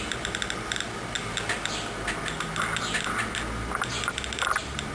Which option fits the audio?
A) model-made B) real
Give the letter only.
B